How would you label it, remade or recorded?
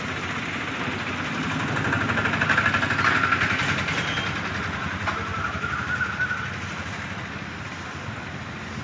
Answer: recorded